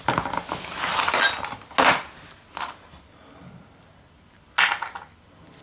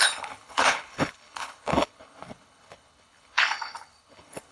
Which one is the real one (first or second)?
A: first